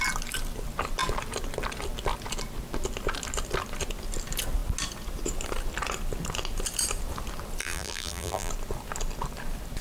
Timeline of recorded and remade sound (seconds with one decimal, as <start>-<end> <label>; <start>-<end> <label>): 0.0-7.6 recorded; 7.6-8.5 remade; 8.5-9.8 recorded